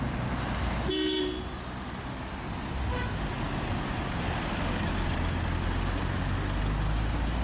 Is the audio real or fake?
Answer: real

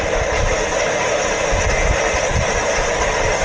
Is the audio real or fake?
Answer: real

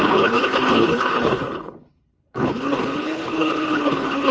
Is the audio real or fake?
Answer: fake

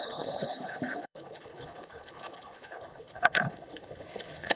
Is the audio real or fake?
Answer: fake